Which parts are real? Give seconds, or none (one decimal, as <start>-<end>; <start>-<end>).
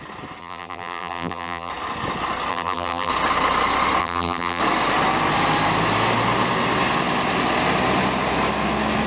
0.0-0.4; 1.7-2.5; 3.1-4.0; 4.6-9.1